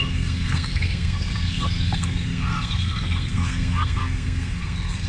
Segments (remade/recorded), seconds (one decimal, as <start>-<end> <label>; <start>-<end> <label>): 0.0-5.1 remade